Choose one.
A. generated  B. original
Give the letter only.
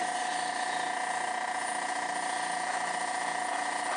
B